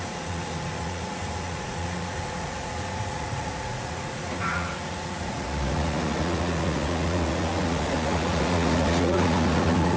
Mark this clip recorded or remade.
remade